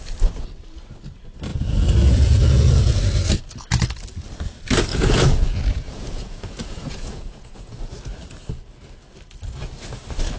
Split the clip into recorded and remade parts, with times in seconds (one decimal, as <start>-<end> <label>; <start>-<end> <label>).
0.0-1.5 recorded; 1.5-3.0 remade; 3.0-4.9 recorded; 4.9-7.8 remade; 7.8-10.4 recorded